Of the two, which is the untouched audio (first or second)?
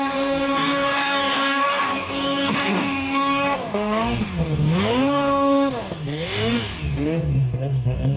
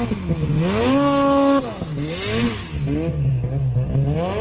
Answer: second